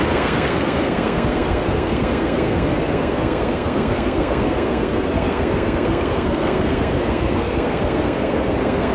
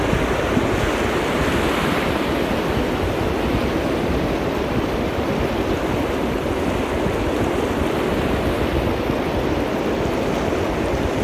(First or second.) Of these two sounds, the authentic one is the second